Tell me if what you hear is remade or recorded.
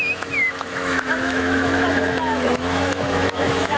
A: remade